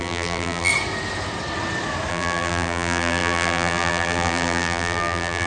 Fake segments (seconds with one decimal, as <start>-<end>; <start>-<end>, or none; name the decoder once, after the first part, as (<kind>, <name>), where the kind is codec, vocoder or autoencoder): 0.0-0.7 (vocoder, BigVGAN v2); 2.1-5.5